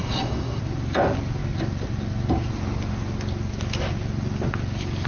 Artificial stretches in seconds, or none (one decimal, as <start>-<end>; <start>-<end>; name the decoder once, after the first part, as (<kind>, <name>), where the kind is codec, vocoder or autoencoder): 0.0-0.6 (codec, SNAC)